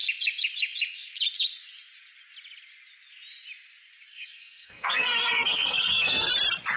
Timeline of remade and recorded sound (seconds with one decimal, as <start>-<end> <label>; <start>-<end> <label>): 0.0-4.1 recorded; 4.1-6.3 remade; 6.3-6.8 recorded